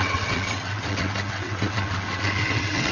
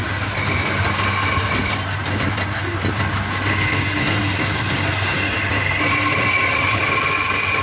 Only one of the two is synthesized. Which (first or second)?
first